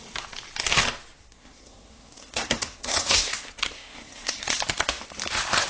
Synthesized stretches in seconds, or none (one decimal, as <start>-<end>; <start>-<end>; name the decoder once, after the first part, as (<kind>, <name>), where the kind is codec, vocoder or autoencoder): 1.2-4.6 (codec, SNAC)

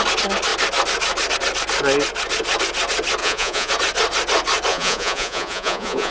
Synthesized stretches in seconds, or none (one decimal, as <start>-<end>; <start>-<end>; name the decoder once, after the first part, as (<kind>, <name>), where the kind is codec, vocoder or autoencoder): 3.2-3.7 (vocoder, Vocos); 4.7-6.1

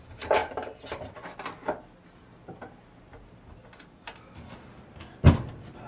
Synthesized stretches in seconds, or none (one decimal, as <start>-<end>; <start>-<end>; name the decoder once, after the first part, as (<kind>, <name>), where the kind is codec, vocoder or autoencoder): none

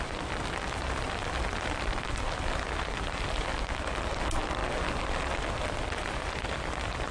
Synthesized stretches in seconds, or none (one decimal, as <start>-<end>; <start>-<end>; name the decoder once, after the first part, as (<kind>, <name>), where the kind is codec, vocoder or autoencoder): none

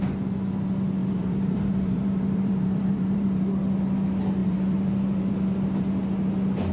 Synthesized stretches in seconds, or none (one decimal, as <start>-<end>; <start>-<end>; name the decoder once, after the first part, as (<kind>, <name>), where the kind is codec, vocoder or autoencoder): 1.0-3.4 (vocoder, BigVGAN v2); 4.4-5.3

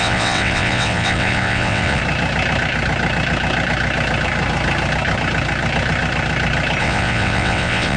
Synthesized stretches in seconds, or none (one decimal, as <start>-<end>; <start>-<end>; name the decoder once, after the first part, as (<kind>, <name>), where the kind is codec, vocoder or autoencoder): 0.0-2.0 (vocoder, WaveNeXt); 6.8-8.0

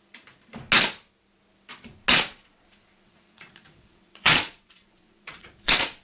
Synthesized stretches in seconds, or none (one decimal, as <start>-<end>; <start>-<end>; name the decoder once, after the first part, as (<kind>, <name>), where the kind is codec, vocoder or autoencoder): 2.1-6.0 (vocoder, Vocos)

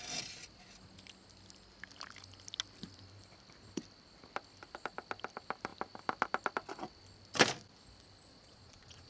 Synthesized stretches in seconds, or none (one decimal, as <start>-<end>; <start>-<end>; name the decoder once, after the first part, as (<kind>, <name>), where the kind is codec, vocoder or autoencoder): 8.3-9.1 (vocoder, Vocos)